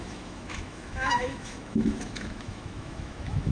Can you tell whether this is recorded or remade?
remade